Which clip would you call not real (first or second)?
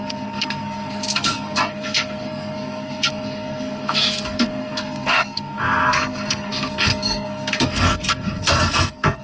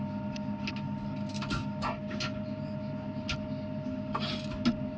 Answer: first